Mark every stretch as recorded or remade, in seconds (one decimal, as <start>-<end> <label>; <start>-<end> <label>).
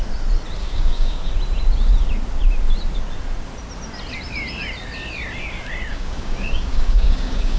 0.0-0.6 recorded; 0.6-1.3 remade; 1.3-5.9 recorded; 5.9-7.6 remade